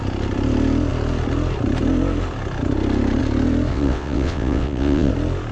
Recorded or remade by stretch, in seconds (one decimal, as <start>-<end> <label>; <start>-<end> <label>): 0.0-3.7 recorded; 3.7-5.1 remade; 5.1-5.5 recorded